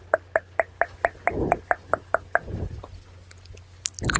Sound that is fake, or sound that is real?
real